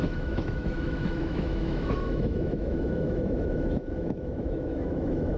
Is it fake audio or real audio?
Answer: fake